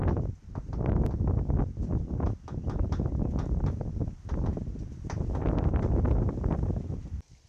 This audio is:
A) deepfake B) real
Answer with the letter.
B